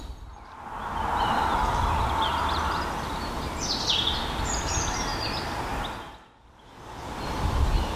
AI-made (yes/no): no